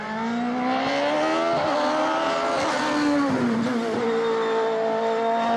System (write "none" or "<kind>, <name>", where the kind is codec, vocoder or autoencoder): none